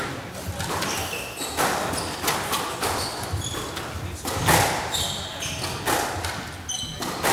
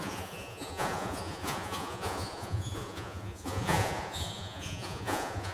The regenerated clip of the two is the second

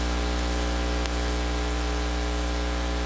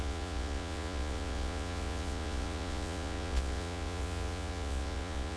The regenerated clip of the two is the second